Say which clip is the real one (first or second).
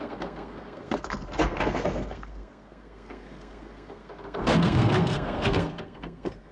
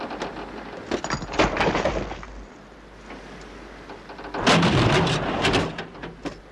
second